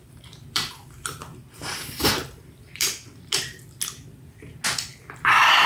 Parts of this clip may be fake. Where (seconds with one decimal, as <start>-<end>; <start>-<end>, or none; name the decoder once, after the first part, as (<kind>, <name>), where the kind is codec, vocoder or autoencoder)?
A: 0.0-3.4 (vocoder, BigVGAN v2)